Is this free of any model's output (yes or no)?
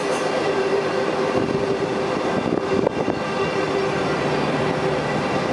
yes